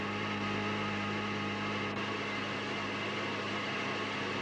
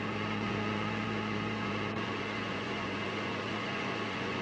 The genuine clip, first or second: first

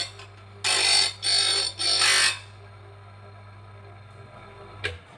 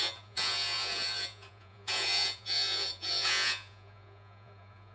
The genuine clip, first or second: first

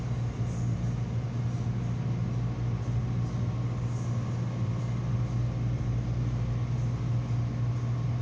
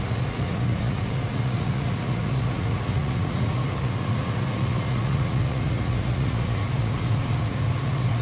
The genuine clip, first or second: first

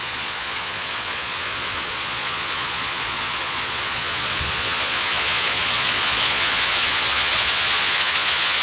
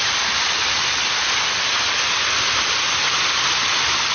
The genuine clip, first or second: second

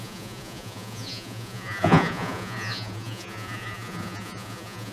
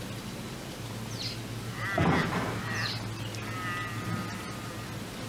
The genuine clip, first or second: second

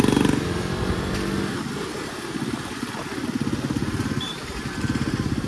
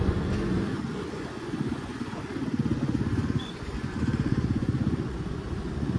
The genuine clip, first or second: first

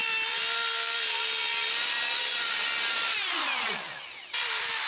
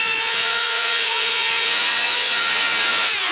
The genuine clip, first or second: first